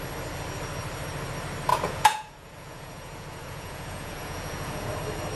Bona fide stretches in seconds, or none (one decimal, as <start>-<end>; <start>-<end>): 0.0-1.7; 4.9-5.4